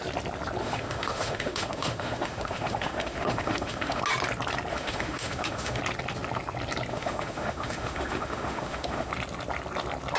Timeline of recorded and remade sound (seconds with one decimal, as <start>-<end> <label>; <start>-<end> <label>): 0.0-0.6 recorded; 0.6-4.0 remade; 4.0-4.7 recorded; 4.7-5.8 remade; 5.8-6.9 recorded; 6.9-9.1 remade; 9.1-10.2 recorded